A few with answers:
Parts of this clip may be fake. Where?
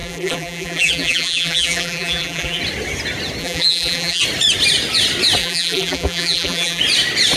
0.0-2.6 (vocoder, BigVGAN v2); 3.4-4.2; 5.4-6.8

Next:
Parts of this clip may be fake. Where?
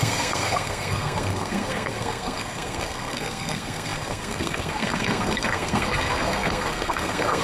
0.0-7.4 (codec, SNAC)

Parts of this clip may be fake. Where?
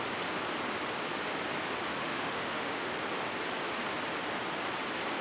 2.0-2.9 (autoencoder, DAC-VAE)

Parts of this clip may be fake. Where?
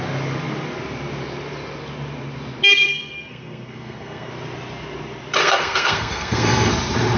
2.7-4.3 (codec, SNAC); 5.4-6.7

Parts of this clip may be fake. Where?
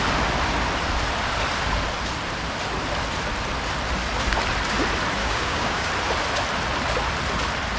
5.2-5.9 (codec, DAC)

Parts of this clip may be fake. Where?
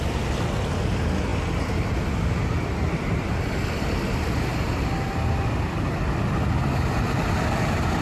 none